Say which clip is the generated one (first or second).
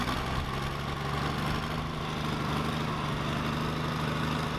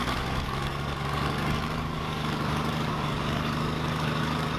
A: second